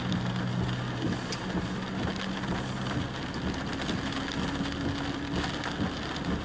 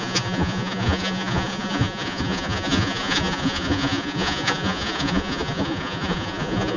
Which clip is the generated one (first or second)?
second